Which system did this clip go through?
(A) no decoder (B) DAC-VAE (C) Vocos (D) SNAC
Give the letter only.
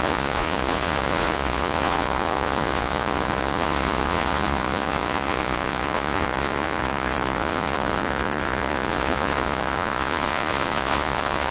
C